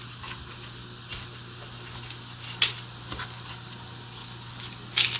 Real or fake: real